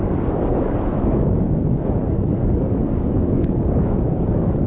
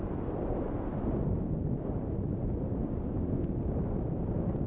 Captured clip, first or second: second